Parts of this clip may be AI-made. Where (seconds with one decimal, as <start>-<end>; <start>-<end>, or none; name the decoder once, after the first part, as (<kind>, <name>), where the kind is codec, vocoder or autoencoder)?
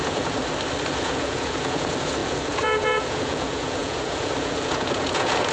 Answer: 0.0-0.4 (vocoder, Vocos); 0.9-5.5